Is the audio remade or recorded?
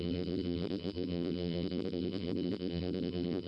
remade